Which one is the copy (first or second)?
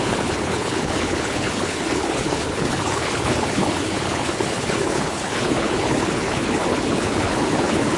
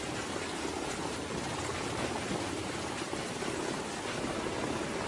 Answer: first